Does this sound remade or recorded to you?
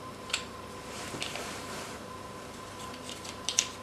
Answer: recorded